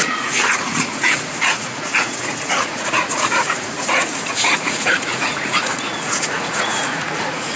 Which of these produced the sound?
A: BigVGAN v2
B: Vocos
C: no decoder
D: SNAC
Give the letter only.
B